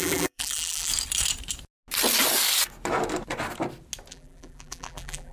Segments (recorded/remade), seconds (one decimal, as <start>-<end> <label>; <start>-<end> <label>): 0.0-0.9 remade; 0.9-4.1 recorded; 4.1-5.3 remade